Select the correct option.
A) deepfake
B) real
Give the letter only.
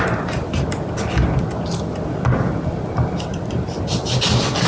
B